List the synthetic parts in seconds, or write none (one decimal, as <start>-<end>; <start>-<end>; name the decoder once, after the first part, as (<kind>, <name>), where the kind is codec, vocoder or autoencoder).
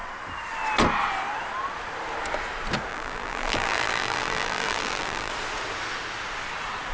2.9-5.3 (vocoder, BigVGAN v2)